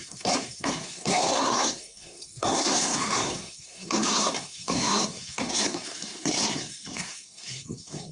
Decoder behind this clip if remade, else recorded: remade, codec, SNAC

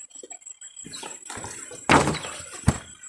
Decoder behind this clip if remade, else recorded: recorded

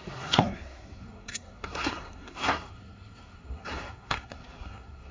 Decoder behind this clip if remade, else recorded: remade, codec, SNAC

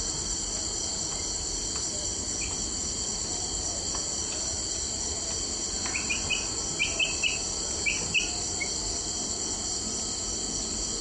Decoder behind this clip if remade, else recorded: recorded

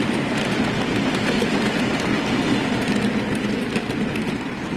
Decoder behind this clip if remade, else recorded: recorded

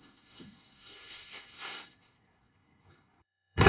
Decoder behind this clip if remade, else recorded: remade, codec, SNAC